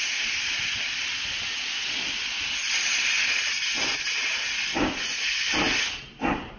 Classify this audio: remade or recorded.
recorded